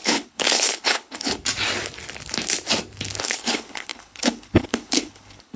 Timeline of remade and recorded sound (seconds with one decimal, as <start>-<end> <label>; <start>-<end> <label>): 0.0-1.3 remade; 1.3-3.2 recorded; 3.2-5.6 remade

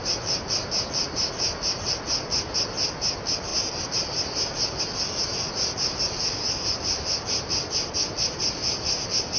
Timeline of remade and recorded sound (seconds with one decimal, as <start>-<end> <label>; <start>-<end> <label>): 0.0-9.4 recorded

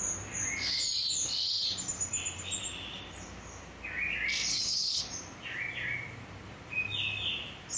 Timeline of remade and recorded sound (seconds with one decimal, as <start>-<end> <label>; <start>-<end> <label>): 0.0-4.5 recorded; 4.5-5.0 remade; 5.0-7.8 recorded

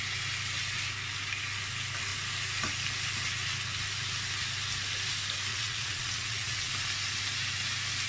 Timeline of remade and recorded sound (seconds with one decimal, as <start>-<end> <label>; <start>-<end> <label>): 0.0-5.5 recorded; 5.5-6.7 remade; 6.7-8.1 recorded

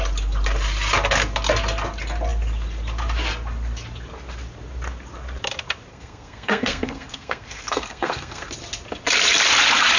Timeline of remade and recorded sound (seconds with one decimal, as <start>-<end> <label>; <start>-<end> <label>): 0.0-5.9 recorded; 5.9-8.5 remade; 8.5-10.0 recorded

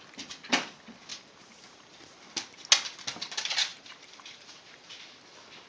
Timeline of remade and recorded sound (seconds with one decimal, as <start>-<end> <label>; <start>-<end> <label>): 0.0-1.1 recorded; 1.1-2.2 remade; 2.2-3.7 recorded; 3.7-4.9 remade; 4.9-5.7 recorded

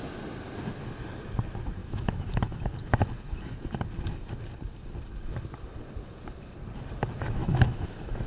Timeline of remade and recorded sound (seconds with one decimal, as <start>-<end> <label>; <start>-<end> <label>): 0.0-1.8 recorded; 1.8-2.6 remade; 2.6-7.4 recorded; 7.4-8.3 remade